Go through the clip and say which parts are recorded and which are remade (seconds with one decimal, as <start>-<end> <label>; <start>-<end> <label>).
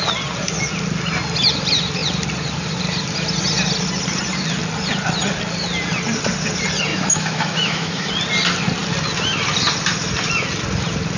0.0-6.9 recorded; 6.9-8.1 remade; 8.1-11.2 recorded